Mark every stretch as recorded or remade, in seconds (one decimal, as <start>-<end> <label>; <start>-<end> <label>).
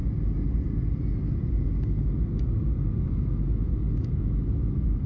0.0-3.1 recorded; 3.1-5.1 remade